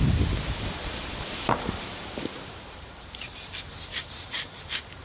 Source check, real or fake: fake